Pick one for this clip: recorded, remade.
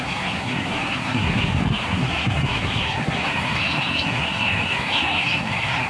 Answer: remade